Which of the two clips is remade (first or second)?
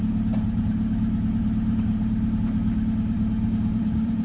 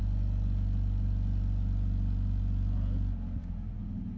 first